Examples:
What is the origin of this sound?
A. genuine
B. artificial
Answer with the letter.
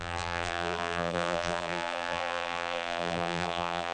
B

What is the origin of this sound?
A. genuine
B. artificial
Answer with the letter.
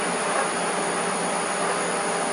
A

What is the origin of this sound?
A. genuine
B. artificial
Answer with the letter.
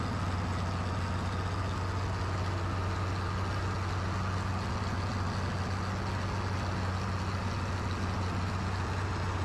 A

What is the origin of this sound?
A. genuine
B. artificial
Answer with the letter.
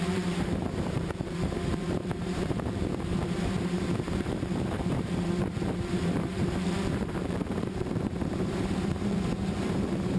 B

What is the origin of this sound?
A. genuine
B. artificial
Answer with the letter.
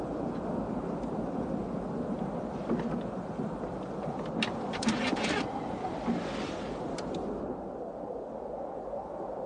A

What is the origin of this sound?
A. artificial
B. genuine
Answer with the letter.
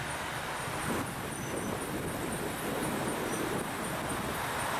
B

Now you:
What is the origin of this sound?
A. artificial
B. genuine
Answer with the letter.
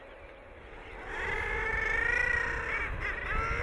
B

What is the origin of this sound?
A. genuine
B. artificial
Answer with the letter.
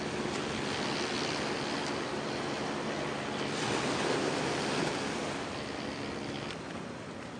A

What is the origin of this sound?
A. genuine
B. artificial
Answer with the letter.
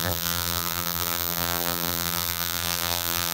B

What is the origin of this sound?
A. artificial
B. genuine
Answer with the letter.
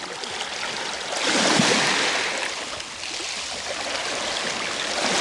B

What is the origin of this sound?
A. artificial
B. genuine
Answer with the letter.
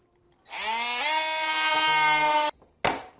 B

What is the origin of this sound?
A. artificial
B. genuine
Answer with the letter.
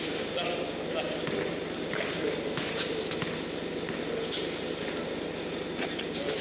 B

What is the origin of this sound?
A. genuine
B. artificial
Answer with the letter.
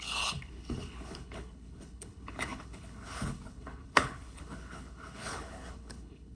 B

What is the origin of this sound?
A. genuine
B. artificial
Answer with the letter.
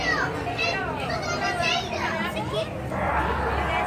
A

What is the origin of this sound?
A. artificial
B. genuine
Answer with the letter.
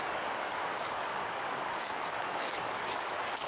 A